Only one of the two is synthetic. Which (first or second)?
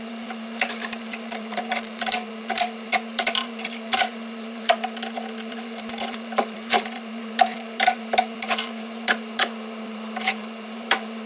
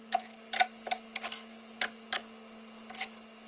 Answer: first